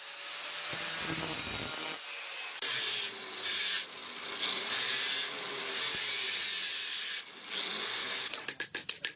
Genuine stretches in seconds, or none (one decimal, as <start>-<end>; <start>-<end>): 0.0-8.0; 8.6-9.2